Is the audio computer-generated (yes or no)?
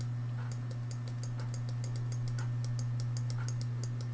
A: no